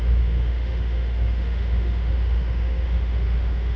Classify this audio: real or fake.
fake